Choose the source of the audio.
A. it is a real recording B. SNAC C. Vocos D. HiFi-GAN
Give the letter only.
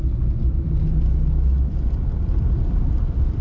A